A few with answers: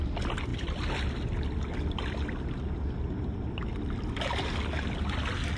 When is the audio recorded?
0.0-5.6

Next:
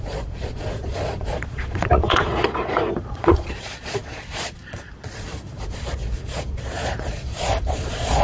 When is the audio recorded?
none

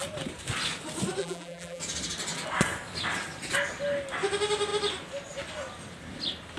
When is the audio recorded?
0.0-1.2; 1.8-6.6

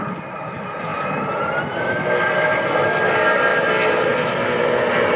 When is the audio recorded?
0.0-5.2

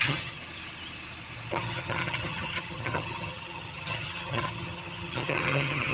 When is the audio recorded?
0.4-1.5